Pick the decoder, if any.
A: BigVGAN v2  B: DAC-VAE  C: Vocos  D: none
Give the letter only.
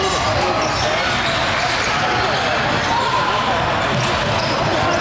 D